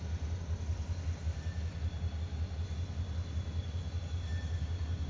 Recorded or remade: recorded